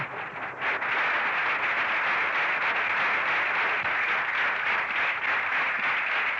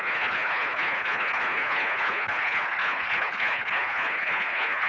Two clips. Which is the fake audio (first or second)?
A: second